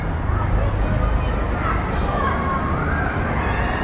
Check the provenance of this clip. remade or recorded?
recorded